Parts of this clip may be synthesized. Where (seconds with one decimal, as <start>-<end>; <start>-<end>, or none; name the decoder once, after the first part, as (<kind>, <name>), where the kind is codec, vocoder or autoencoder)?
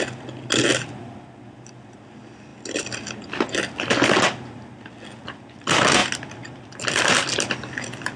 none